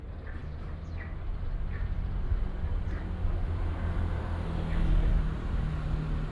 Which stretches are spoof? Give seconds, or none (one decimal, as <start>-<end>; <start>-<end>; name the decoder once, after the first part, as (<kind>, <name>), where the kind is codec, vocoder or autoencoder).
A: none